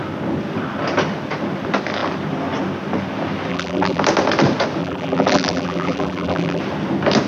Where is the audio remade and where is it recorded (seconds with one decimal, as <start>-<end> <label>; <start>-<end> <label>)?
0.0-3.5 recorded; 3.5-4.0 remade; 4.0-4.8 recorded; 4.8-6.6 remade; 6.6-7.3 recorded